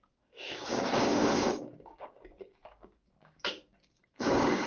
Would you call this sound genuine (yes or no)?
no